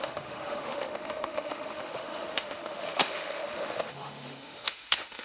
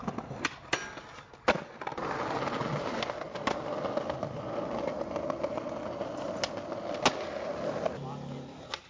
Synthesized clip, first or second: first